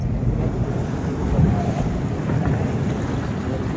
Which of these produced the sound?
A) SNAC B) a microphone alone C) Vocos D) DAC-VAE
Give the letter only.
B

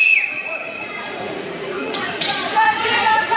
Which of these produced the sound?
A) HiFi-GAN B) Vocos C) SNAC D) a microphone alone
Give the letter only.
B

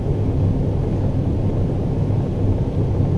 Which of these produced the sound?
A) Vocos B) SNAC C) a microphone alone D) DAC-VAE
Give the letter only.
C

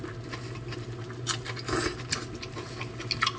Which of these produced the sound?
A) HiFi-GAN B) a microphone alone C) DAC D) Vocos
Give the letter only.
B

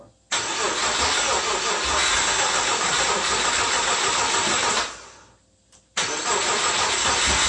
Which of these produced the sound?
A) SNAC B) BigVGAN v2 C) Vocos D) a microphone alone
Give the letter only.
D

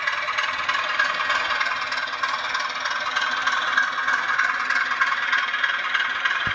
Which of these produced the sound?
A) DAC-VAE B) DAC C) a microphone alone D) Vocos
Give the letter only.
C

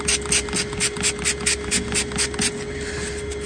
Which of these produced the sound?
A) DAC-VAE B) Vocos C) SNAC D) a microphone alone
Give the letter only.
D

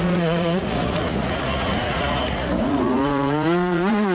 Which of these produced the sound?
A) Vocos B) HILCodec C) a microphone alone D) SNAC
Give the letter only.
A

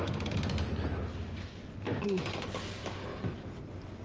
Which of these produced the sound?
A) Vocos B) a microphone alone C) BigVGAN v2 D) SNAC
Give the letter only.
B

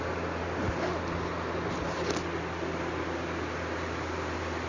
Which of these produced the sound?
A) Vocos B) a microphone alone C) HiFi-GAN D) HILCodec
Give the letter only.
B